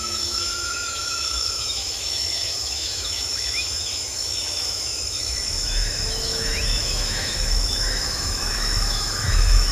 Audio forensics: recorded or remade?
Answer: remade